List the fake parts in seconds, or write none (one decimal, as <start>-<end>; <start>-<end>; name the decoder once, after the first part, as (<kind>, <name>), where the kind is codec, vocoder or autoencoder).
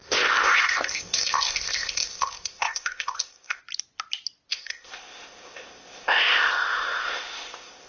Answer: 0.0-3.6 (codec, ZipCodec); 4.5-7.9